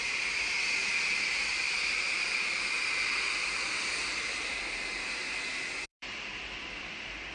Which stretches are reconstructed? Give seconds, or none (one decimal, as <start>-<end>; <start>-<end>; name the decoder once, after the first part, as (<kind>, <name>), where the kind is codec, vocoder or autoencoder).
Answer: 1.5-4.6 (vocoder, BigVGAN v2); 5.9-7.3